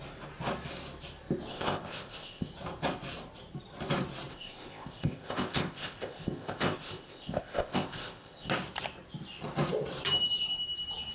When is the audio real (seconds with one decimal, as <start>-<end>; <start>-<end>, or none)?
0.0-1.5; 2.5-4.3; 8.5-11.1

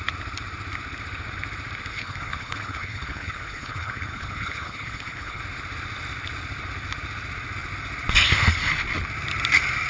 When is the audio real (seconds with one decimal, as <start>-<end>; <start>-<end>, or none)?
0.0-1.9; 5.4-9.9